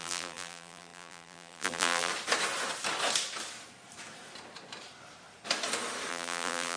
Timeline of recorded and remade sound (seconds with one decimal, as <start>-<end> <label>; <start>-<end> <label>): 0.0-2.1 remade; 2.1-6.1 recorded; 6.1-6.8 remade